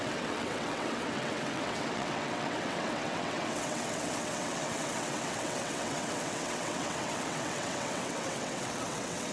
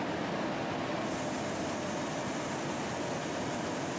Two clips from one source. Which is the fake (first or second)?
first